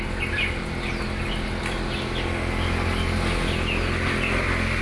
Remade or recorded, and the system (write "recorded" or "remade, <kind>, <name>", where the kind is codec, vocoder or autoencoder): recorded